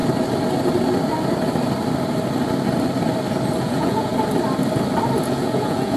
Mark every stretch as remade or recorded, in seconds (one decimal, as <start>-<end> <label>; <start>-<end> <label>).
0.0-3.6 recorded; 3.6-4.1 remade; 4.1-5.2 recorded; 5.2-6.0 remade